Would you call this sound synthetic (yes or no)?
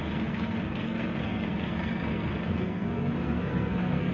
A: yes